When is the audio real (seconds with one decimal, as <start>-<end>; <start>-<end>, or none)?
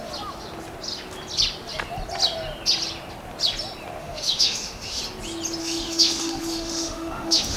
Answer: 0.0-4.0; 5.0-5.6